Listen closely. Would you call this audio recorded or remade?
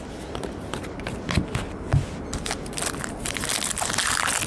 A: recorded